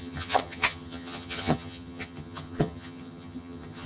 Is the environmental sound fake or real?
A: fake